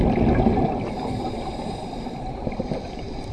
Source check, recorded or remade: recorded